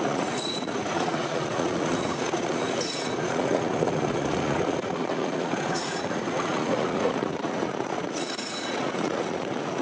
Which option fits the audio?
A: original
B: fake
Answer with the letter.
B